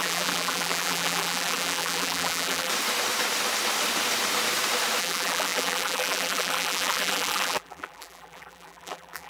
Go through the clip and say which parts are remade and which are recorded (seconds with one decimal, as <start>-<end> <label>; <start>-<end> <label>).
0.0-2.7 remade; 2.7-5.0 recorded; 5.0-9.3 remade